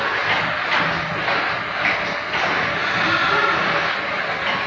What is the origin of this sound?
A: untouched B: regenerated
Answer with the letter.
A